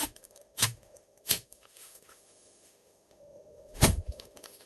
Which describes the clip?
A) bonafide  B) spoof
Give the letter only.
B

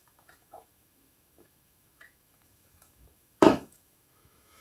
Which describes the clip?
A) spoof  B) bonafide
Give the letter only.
A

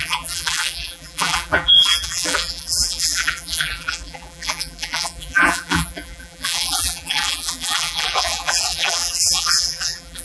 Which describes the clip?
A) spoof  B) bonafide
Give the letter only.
A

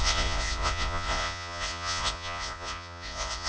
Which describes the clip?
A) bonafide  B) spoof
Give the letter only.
B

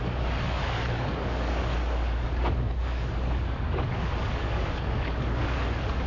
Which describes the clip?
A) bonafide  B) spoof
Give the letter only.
B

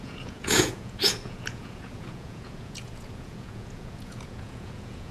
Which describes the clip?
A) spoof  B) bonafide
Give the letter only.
A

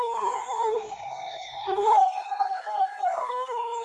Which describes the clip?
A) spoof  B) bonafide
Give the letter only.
A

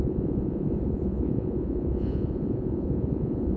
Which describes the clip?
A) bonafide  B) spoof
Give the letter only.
B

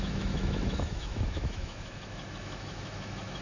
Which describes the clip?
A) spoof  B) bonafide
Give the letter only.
A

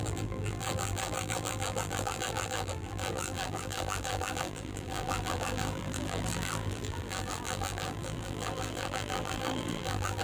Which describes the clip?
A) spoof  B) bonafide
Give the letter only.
A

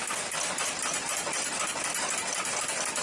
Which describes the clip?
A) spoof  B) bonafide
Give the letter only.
B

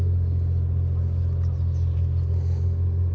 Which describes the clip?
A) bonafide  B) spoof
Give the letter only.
A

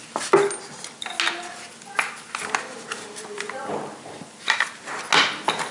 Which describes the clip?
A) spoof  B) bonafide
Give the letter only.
B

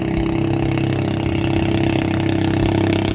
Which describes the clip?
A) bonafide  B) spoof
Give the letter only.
A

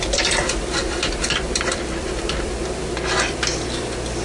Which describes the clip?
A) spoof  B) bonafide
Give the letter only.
A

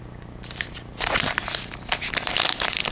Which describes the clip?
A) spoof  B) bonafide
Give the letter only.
B